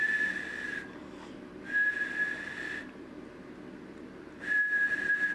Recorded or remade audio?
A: recorded